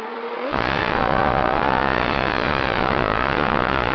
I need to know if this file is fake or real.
fake